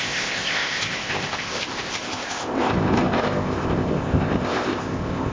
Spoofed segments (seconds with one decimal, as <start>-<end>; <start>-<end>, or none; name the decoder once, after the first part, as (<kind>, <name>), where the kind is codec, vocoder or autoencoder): 0.0-5.3 (codec, ZipCodec)

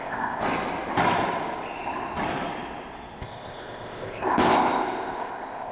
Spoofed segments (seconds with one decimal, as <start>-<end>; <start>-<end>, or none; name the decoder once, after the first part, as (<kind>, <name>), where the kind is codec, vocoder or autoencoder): 0.0-0.4 (codec, ZipCodec); 3.2-5.7